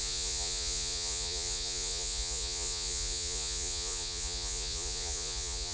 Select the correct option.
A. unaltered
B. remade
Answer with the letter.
B